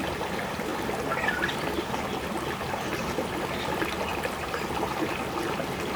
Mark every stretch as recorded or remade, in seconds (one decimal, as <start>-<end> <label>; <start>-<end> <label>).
0.0-6.0 recorded